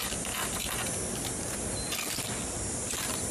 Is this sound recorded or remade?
recorded